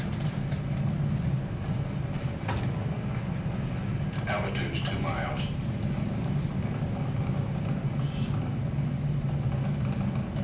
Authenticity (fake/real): real